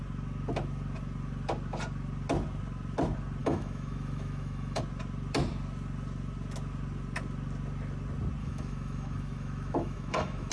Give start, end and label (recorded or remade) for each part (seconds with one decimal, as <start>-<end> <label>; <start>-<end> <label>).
0.0-3.4 recorded; 3.4-4.8 remade; 4.8-8.4 recorded; 8.4-10.5 remade